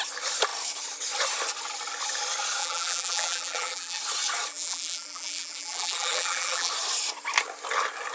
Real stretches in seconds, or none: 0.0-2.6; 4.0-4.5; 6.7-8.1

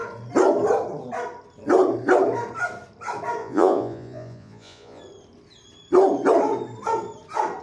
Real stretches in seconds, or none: 0.0-3.4; 5.0-7.6

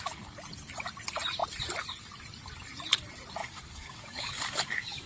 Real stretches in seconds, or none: 0.0-3.4